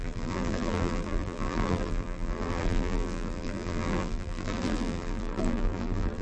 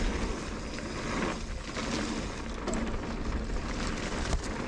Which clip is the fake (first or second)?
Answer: first